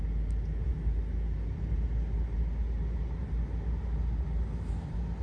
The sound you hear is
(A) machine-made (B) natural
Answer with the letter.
B